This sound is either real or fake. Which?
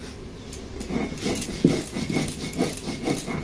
real